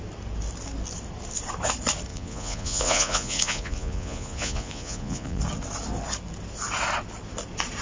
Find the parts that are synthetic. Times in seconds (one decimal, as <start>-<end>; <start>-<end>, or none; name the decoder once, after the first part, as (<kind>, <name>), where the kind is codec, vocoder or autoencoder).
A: 2.1-5.4 (vocoder, Vocos)